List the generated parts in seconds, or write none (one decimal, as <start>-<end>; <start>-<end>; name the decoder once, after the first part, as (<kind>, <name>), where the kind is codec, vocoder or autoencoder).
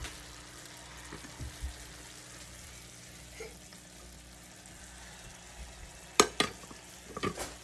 none